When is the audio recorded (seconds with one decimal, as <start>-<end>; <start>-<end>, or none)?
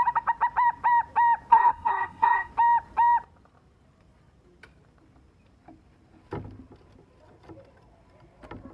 0.0-1.5; 2.5-8.7